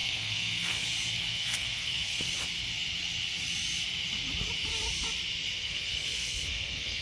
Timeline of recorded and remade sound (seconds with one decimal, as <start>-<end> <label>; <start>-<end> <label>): 0.0-0.9 remade; 0.9-1.3 recorded; 1.3-2.3 remade; 2.3-5.6 recorded; 5.6-7.0 remade